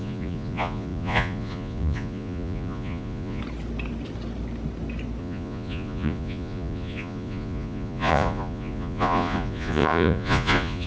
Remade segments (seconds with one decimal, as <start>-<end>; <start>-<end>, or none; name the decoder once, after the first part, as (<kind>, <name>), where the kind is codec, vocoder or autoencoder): 0.0-3.4 (vocoder, Vocos); 5.2-10.9